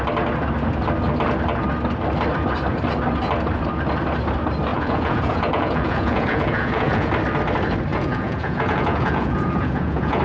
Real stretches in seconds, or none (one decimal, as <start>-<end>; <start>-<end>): 0.0-4.7; 7.1-7.9